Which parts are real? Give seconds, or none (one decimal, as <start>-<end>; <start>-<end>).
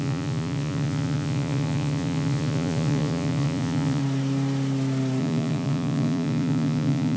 4.0-5.2